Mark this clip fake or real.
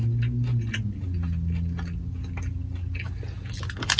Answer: real